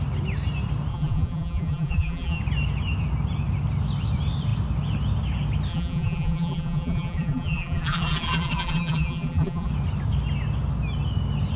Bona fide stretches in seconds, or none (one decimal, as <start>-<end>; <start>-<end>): 0.0-0.9; 2.4-5.7; 9.7-11.6